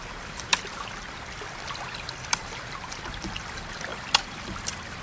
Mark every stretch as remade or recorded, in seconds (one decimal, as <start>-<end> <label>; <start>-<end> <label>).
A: 0.0-0.5 remade; 0.5-1.1 recorded; 1.1-5.0 remade